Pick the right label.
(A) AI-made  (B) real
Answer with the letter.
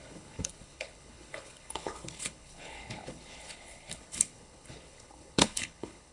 A